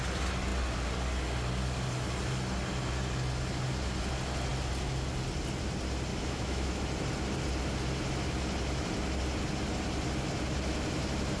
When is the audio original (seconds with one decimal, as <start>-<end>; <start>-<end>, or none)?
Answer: 0.0-6.1; 6.8-11.4